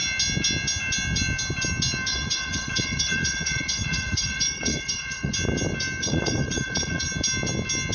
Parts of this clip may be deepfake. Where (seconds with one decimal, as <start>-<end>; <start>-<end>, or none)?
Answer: 2.1-5.3; 6.0-7.1